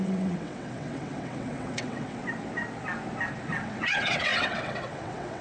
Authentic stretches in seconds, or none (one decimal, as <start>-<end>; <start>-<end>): 2.2-3.4